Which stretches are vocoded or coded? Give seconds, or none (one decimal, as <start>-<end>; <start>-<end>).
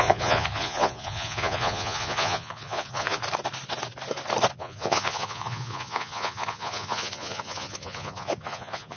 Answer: 0.0-3.2; 4.5-9.0